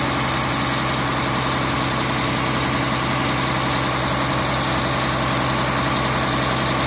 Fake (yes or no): no